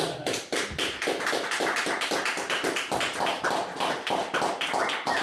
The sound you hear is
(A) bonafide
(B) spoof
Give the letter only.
A